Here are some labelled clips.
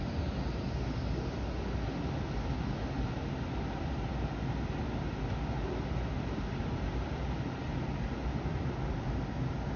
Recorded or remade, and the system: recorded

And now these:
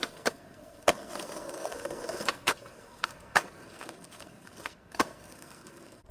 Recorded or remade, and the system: remade, codec, SNAC